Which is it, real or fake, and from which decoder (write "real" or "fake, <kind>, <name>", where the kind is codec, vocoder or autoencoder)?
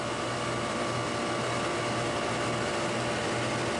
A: real